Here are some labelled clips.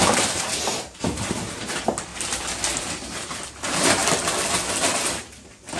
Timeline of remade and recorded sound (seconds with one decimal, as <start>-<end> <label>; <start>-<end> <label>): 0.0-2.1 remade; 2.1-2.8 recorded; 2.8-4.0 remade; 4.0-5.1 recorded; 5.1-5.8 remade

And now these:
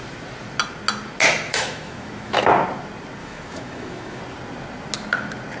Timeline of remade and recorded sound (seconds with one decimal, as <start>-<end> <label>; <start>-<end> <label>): 0.0-1.5 recorded; 1.5-2.4 remade; 2.4-3.2 recorded; 3.2-4.2 remade; 4.2-5.6 recorded

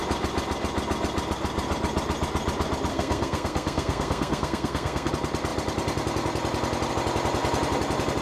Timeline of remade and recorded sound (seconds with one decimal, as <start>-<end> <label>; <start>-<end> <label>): 0.0-2.9 recorded; 2.9-5.1 remade; 5.1-8.2 recorded